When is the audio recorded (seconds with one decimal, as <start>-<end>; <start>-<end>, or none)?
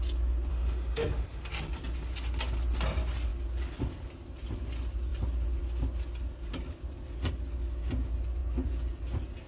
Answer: 0.0-0.5; 1.5-9.5